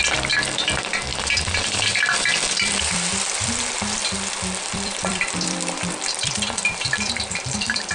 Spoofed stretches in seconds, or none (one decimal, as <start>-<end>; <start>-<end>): 0.0-4.0; 4.6-7.9